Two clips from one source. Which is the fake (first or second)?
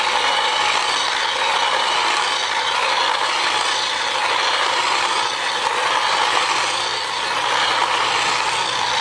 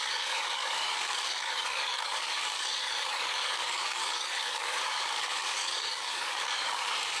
second